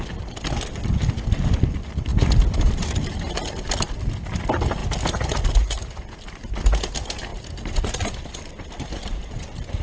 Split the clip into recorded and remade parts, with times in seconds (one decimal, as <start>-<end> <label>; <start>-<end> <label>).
0.0-2.1 recorded; 2.1-2.8 remade; 2.8-9.8 recorded